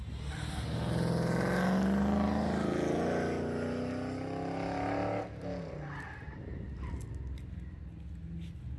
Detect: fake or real real